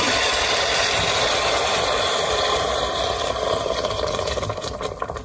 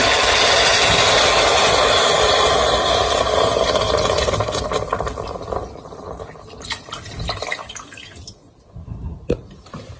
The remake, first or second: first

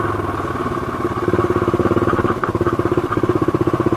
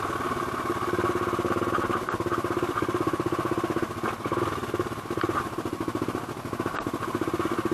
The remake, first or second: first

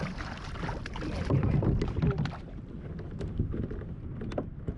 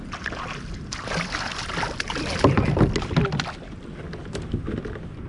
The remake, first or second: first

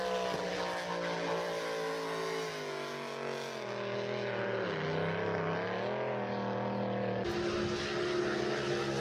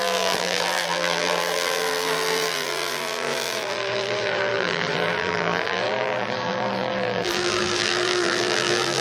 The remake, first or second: second